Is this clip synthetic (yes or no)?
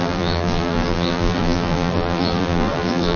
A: yes